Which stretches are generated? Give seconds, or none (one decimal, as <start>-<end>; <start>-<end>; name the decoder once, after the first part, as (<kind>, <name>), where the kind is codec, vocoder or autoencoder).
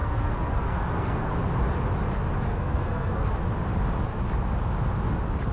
0.0-1.3 (codec, SNAC); 2.5-3.3